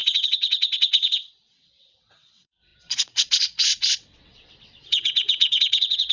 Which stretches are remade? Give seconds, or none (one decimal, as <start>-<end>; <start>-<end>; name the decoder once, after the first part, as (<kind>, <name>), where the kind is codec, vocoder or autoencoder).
0.0-6.1 (vocoder, WaveNeXt)